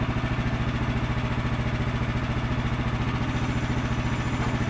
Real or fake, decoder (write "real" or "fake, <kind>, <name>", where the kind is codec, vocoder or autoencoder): real